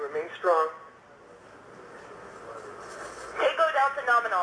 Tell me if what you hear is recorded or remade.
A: recorded